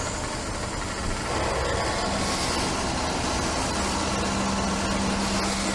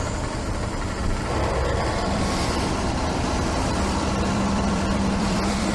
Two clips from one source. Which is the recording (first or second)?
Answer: first